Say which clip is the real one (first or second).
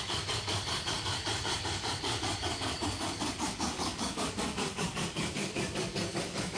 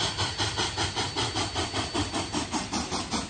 second